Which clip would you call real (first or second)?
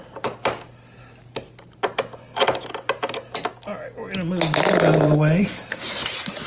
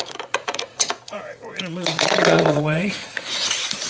first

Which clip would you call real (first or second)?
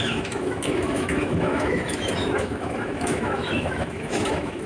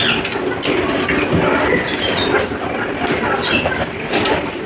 second